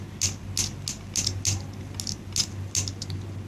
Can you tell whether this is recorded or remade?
recorded